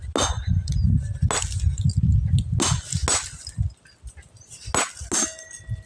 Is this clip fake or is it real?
real